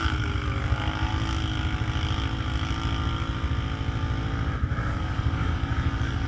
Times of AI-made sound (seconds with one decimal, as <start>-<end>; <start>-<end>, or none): 0.0-1.1; 4.9-6.3